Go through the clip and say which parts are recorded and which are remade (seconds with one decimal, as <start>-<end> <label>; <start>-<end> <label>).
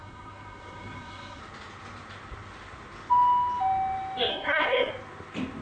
0.0-1.4 remade; 1.4-4.3 recorded; 4.3-4.9 remade; 4.9-5.6 recorded